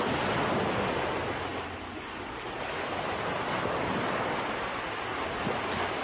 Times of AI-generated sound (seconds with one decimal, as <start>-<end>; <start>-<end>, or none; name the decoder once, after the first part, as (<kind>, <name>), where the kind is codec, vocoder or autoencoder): none